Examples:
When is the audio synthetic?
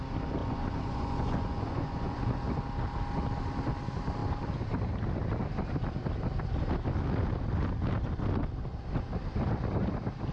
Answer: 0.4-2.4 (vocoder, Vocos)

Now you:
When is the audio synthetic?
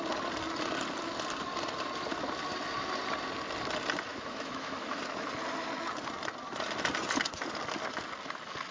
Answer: 4.1-5.0 (autoencoder, DAC-VAE)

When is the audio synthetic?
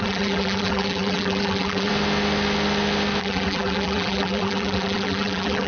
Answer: 0.0-1.9 (vocoder, BigVGAN v2); 3.2-5.7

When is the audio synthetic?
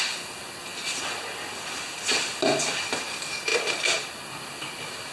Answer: 3.5-4.2 (vocoder, BigVGAN v2)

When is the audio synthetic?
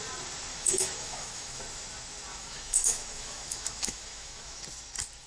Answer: 0.5-1.6 (autoencoder, DAC-VAE); 2.3-4.6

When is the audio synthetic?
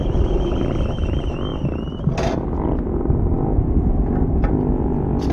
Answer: none